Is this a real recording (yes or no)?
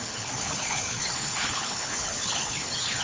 no